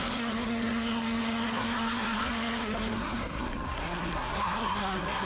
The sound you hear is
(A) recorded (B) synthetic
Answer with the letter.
B